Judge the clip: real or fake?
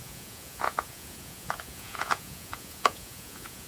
fake